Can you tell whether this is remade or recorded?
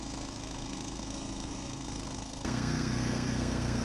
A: remade